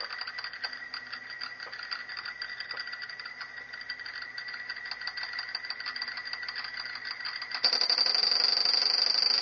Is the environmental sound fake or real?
real